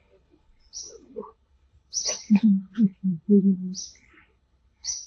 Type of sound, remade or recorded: remade